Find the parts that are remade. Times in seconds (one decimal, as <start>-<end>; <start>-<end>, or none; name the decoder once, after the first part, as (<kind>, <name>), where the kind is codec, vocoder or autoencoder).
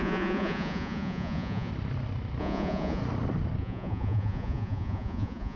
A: 0.0-1.7 (vocoder, Vocos); 2.4-3.0; 3.6-5.6